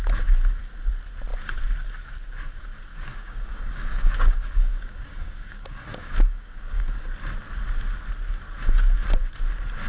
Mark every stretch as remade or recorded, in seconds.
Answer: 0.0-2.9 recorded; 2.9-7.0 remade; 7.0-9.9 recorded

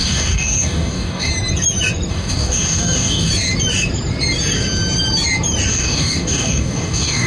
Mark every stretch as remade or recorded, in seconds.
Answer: 0.0-1.3 remade; 1.3-2.1 recorded; 2.1-3.3 remade; 3.3-5.7 recorded; 5.7-7.3 remade